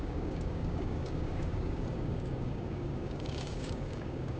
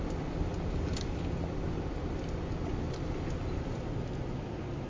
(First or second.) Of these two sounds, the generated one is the first